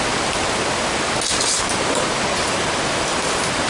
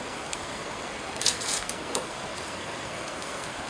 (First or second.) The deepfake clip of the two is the second